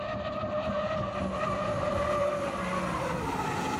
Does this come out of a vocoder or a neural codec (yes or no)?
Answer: no